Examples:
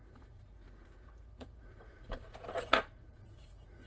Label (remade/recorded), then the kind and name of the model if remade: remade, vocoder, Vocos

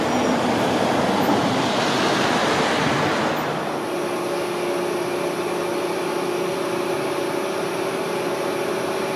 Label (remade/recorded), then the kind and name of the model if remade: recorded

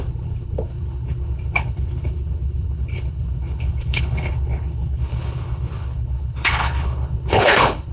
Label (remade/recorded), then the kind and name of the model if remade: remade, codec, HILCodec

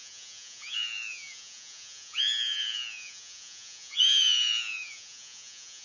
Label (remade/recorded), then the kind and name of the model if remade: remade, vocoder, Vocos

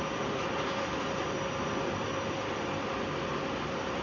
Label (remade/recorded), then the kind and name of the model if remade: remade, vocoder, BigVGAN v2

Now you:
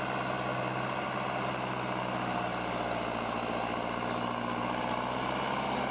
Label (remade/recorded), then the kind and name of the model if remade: recorded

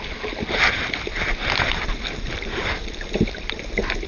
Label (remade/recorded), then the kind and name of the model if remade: recorded